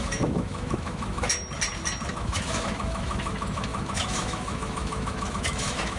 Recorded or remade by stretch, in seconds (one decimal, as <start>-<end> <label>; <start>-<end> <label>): 0.0-1.3 remade; 1.3-2.1 recorded; 2.1-6.0 remade